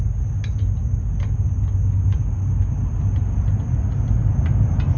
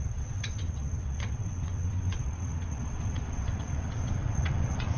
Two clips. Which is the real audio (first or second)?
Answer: first